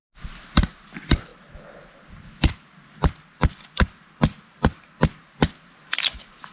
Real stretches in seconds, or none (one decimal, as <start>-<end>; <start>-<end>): 0.0-6.5